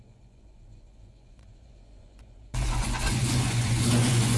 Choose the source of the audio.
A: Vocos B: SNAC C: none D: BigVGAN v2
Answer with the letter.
A